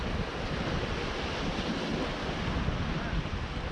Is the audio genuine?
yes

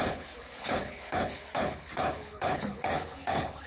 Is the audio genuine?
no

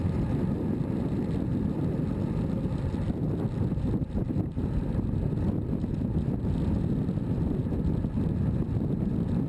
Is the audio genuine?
yes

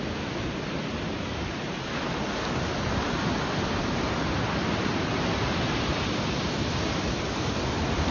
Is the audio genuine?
yes